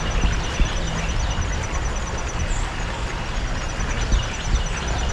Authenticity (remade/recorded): recorded